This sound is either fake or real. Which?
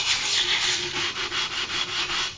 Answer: real